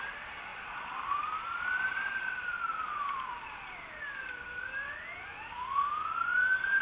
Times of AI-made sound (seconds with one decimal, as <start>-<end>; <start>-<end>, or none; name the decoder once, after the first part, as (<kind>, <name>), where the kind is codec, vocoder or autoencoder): none